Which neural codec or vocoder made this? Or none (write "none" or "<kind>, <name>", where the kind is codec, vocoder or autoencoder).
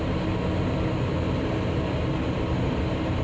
none